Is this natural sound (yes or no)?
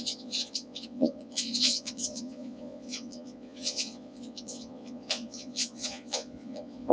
no